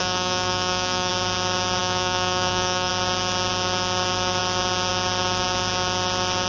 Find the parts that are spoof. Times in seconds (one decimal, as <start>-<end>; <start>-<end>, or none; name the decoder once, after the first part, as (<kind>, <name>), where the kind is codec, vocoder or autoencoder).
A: 0.0-1.1 (codec, DAC); 1.8-2.9